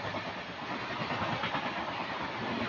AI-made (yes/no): no